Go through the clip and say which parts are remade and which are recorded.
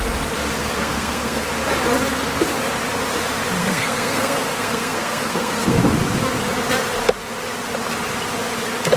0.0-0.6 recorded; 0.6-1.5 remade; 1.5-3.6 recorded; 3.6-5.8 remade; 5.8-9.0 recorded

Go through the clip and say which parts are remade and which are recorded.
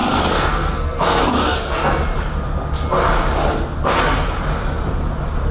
0.0-2.0 remade; 2.0-5.5 recorded